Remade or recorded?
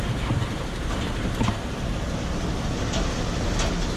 recorded